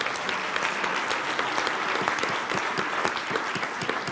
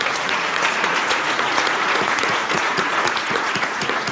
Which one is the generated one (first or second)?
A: second